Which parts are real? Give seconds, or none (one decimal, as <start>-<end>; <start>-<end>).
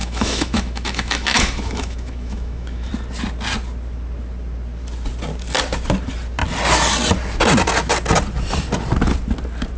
2.9-9.8